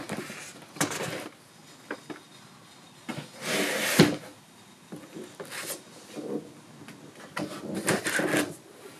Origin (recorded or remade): recorded